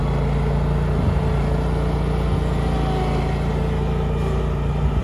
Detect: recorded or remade recorded